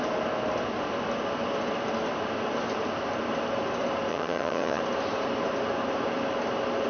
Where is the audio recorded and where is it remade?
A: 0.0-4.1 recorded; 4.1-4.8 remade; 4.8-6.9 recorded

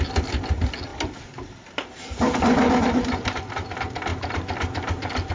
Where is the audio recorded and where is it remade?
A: 0.0-5.3 recorded

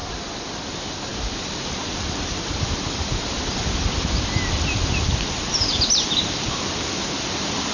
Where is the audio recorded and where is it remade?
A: 0.0-7.7 recorded

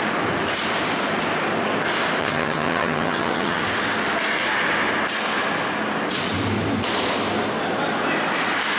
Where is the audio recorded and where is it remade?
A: 0.0-2.2 recorded; 2.2-3.6 remade; 3.6-8.8 recorded

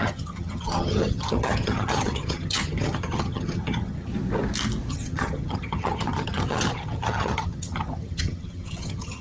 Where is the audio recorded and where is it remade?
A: 0.0-4.1 remade; 4.1-4.9 recorded; 4.9-9.2 remade